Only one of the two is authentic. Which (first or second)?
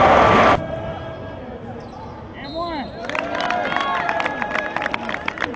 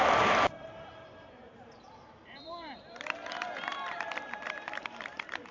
first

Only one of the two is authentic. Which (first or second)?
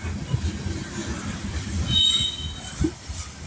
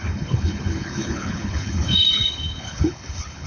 first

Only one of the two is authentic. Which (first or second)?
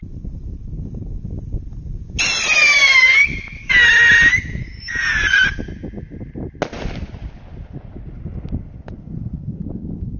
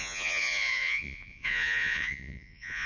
first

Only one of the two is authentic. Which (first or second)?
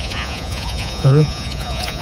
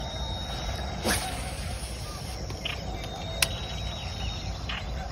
second